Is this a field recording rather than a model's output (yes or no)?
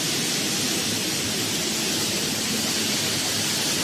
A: yes